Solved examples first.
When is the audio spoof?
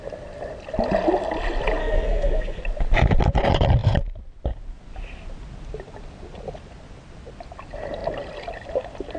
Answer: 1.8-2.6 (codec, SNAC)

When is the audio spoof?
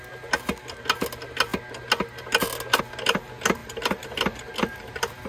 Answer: 3.6-5.3 (vocoder, BigVGAN v2)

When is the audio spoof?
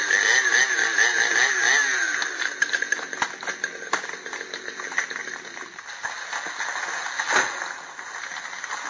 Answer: none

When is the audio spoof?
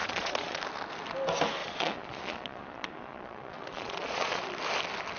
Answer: 0.0-0.6 (vocoder, Vocos); 1.6-4.4